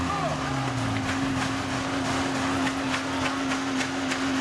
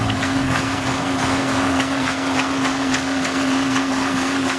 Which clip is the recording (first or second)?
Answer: first